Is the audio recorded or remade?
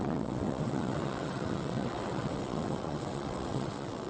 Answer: remade